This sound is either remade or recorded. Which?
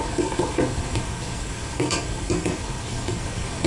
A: remade